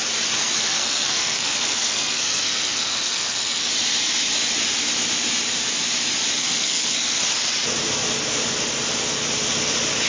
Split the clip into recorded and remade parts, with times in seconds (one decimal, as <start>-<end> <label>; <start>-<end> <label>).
0.0-0.4 recorded; 0.4-3.7 remade; 3.7-6.4 recorded; 6.4-7.2 remade; 7.2-10.1 recorded